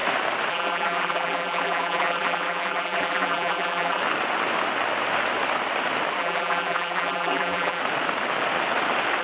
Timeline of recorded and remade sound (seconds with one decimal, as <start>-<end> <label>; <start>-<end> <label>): 0.0-0.5 recorded; 0.5-4.0 remade; 4.0-6.2 recorded; 6.2-7.8 remade; 7.8-9.2 recorded

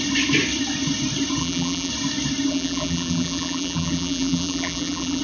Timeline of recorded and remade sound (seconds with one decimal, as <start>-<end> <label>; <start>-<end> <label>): 0.0-1.4 recorded; 1.4-1.9 remade; 1.9-2.5 recorded; 2.5-5.2 remade

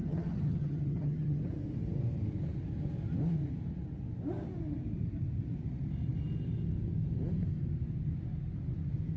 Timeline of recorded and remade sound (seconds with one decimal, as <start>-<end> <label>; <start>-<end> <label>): 0.0-1.4 remade; 1.4-9.2 recorded

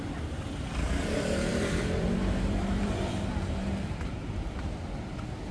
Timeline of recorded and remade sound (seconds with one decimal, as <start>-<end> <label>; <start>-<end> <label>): 0.0-1.5 recorded; 1.5-4.8 remade; 4.8-5.5 recorded

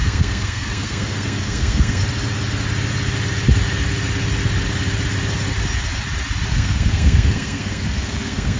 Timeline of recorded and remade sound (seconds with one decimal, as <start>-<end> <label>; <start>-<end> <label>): 0.0-2.0 remade; 2.0-6.5 recorded; 6.5-8.6 remade